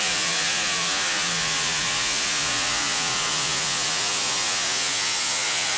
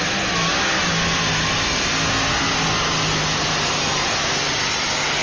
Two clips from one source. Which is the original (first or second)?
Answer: second